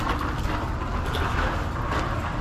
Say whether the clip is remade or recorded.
recorded